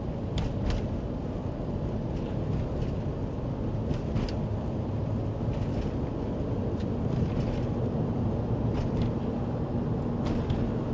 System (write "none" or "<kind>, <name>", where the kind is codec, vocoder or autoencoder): none